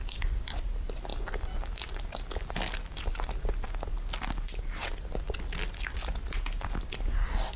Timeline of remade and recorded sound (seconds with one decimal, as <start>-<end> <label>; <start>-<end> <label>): 0.0-7.6 recorded